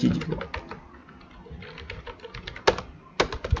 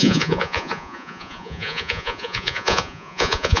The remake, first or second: second